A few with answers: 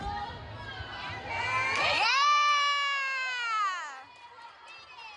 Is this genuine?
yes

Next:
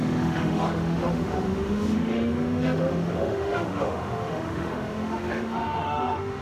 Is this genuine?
no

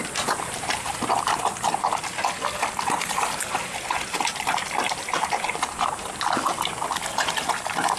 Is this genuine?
yes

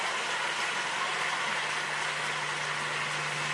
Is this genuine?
yes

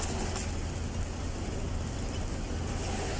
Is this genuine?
yes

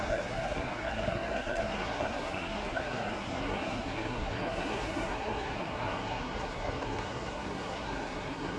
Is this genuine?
no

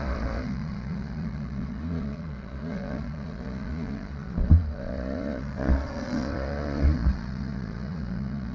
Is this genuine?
no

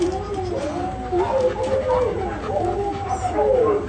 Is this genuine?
yes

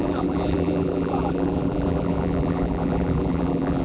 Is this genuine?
no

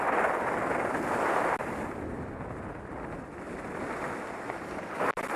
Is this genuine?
yes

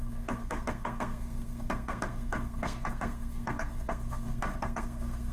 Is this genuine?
no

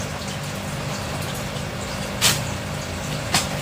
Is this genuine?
yes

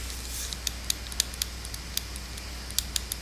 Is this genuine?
yes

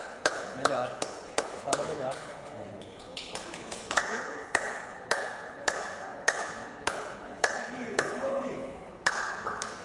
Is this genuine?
no